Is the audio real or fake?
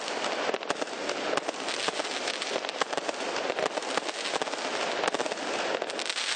real